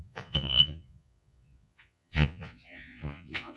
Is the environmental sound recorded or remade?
remade